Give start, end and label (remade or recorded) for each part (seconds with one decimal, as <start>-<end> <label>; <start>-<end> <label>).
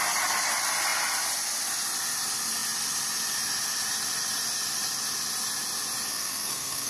0.0-6.1 recorded; 6.1-6.9 remade